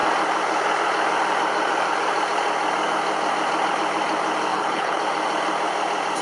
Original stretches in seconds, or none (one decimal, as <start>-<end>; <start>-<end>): 0.0-4.5; 5.0-6.2